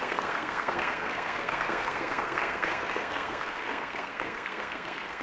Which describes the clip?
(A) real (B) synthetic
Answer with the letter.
B